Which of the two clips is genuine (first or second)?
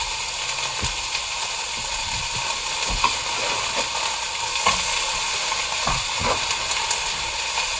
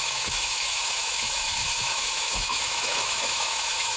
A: first